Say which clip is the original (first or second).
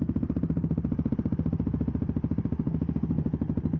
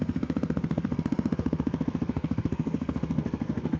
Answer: first